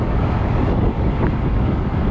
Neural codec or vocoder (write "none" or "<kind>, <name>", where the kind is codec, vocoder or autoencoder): codec, DAC